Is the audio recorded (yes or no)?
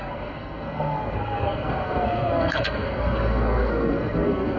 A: no